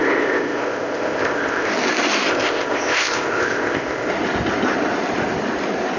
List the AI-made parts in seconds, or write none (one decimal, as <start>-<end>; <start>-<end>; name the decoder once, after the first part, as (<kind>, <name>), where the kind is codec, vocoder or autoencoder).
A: 0.0-1.7 (codec, ZipCodec); 2.3-4.1